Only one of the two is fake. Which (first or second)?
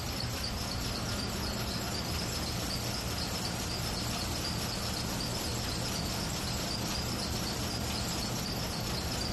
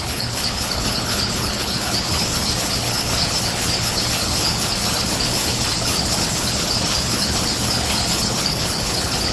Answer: second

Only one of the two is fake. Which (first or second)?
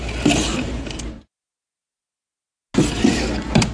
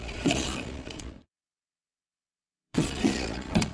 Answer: second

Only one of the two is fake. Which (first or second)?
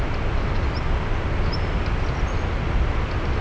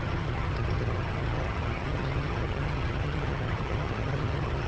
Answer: second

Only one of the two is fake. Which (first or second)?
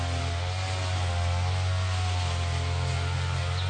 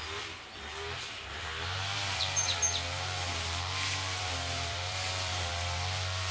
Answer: second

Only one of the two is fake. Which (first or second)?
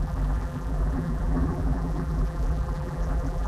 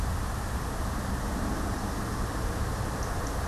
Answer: first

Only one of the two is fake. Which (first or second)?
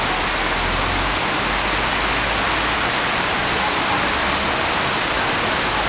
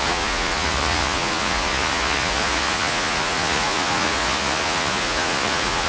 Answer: second